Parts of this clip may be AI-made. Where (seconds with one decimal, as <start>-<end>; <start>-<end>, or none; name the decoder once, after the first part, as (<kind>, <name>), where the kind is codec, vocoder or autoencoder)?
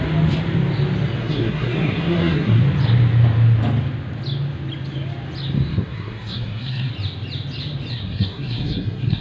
1.2-2.6 (codec, SNAC); 5.7-6.9; 7.9-9.2